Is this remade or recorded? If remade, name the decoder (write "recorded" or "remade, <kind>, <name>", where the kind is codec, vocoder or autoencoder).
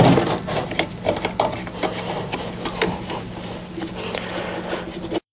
recorded